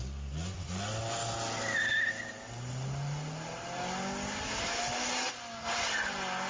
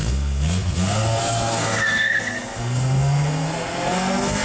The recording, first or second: first